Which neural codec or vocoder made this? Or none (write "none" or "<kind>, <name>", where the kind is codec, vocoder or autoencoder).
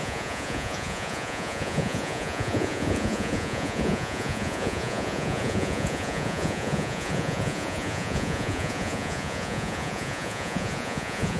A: vocoder, Vocos